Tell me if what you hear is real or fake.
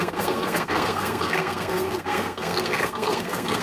fake